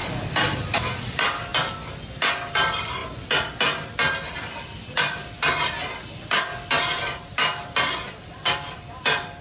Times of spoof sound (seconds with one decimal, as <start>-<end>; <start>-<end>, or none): 0.0-1.5; 2.5-3.0; 7.3-9.4